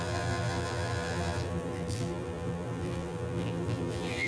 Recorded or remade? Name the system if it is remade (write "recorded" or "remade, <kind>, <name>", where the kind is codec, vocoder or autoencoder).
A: remade, vocoder, BigVGAN v2